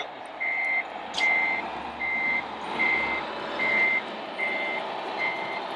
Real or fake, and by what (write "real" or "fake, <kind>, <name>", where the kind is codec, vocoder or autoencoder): real